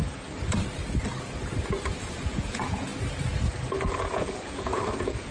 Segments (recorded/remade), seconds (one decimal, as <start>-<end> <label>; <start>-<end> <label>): 0.0-2.0 recorded; 2.0-2.9 remade; 2.9-4.1 recorded; 4.1-5.3 remade